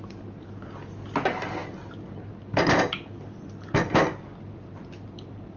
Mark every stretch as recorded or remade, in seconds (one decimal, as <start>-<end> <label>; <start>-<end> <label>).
0.0-5.6 recorded